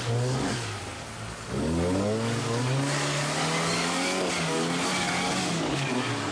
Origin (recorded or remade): remade